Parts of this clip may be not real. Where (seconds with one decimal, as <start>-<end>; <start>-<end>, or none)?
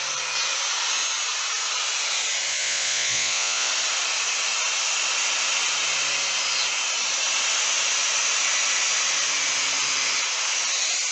2.5-3.7